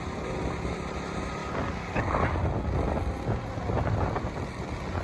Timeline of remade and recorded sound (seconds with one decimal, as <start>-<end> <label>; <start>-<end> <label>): 0.0-5.0 recorded